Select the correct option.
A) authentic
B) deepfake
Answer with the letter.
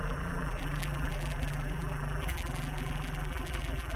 B